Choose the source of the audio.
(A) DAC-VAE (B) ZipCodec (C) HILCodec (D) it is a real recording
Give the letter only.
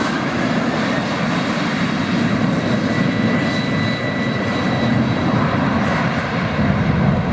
D